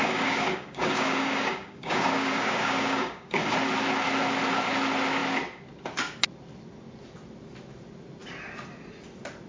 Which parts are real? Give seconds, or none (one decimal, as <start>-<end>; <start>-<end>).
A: 3.5-9.5